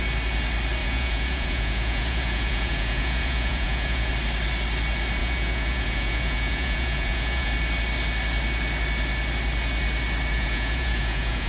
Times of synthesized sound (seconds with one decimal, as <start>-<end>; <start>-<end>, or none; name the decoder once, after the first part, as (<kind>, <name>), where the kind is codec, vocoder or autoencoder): 0.8-4.1 (vocoder, Vocos); 5.2-7.5; 10.3-11.5